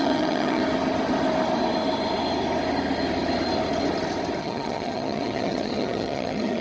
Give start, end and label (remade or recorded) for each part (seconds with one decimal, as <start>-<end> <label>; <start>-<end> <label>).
0.0-0.6 remade; 0.6-4.4 recorded; 4.4-6.6 remade